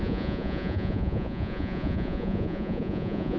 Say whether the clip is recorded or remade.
remade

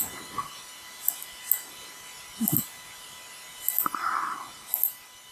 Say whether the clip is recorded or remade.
recorded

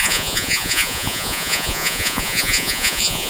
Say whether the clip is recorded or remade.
remade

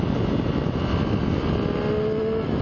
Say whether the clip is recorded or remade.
recorded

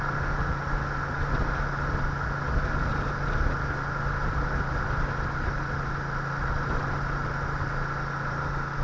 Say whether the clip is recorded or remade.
recorded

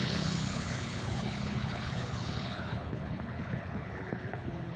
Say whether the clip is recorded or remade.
remade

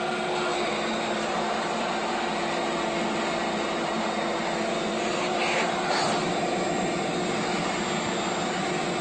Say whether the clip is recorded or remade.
recorded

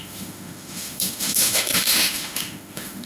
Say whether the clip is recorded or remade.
remade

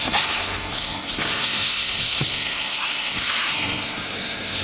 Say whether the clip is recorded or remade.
remade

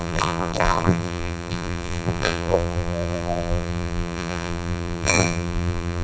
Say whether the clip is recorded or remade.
remade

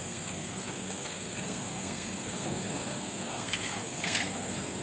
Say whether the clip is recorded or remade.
remade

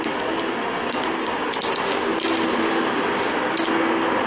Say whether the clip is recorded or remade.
recorded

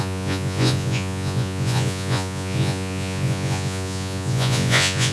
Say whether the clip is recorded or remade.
remade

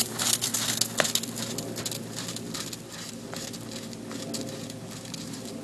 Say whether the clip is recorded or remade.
recorded